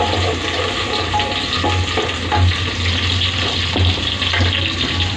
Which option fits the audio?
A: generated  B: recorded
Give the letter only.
B